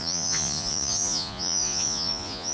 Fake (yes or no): yes